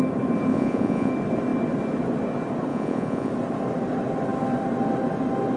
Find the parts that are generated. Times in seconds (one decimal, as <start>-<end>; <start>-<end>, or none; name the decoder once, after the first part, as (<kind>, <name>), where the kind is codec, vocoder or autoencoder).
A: 0.5-1.1 (vocoder, Vocos); 2.7-3.3